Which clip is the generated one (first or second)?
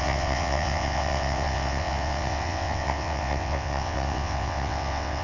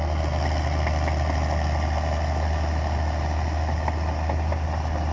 first